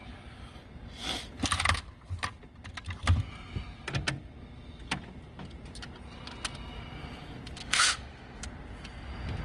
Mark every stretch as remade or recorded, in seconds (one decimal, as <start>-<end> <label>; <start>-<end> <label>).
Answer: 0.0-7.6 recorded; 7.6-8.4 remade; 8.4-9.4 recorded